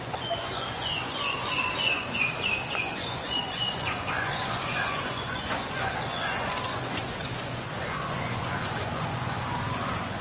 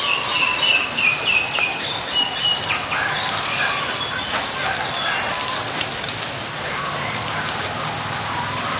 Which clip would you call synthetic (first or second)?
first